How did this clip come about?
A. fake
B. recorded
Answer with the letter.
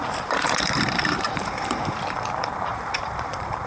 A